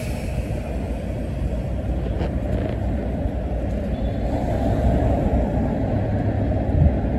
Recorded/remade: recorded